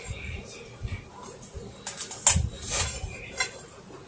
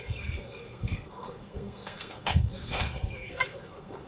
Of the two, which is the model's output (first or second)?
second